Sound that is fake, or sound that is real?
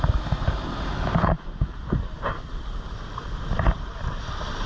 fake